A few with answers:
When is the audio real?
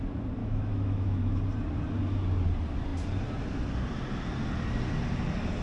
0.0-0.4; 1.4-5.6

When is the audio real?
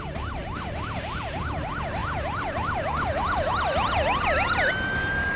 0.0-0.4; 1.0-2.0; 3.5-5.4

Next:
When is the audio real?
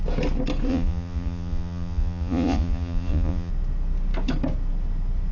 0.0-0.7; 3.5-5.3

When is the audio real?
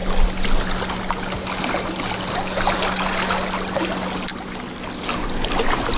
0.0-6.0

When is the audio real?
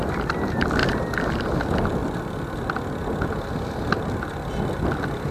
0.0-5.3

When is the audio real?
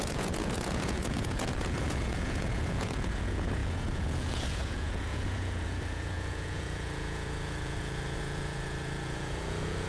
none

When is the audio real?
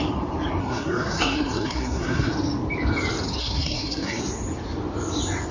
0.0-0.6; 2.3-3.4; 4.2-5.5